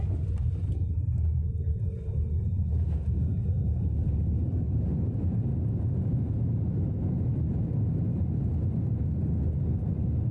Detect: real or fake real